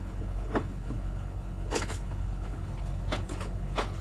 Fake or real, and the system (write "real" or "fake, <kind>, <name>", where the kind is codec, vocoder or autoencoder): fake, codec, HILCodec